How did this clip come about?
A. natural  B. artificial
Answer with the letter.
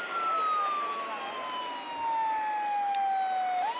A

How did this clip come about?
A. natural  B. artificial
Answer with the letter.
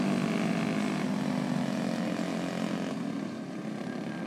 A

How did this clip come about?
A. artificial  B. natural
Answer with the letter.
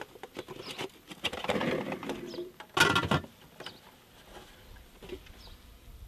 B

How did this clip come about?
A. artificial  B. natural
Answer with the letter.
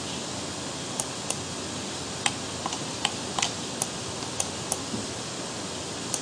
A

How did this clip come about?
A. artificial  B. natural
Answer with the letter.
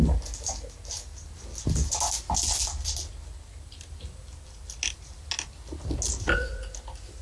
B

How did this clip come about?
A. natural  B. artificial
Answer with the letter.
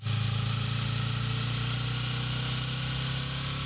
A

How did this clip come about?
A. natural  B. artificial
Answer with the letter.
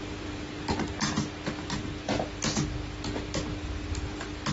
A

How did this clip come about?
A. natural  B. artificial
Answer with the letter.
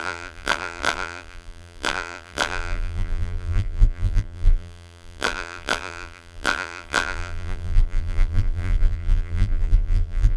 B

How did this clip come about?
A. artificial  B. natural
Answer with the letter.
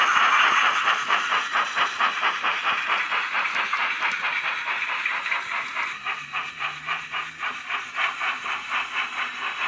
A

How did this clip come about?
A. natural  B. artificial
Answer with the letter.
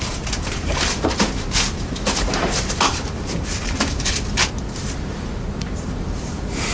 B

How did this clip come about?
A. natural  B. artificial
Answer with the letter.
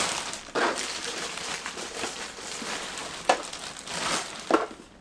B